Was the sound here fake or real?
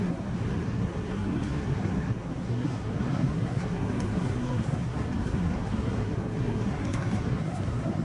fake